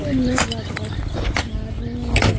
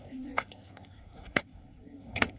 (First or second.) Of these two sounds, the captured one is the first